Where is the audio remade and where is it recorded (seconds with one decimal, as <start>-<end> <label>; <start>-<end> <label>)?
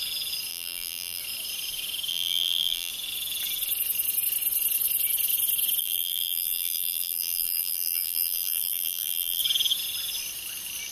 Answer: 0.0-0.5 recorded; 0.5-1.2 remade; 1.2-2.1 recorded; 2.1-2.9 remade; 2.9-5.8 recorded; 5.8-9.4 remade; 9.4-10.9 recorded